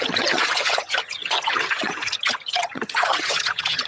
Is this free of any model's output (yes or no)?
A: no